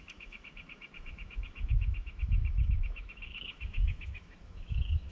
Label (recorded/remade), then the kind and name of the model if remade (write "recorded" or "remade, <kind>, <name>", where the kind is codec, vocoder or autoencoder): remade, autoencoder, DAC-VAE